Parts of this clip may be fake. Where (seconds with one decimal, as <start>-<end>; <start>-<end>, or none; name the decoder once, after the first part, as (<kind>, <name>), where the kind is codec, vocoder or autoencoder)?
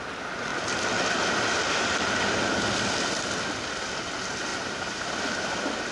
4.5-5.1 (vocoder, BigVGAN v2)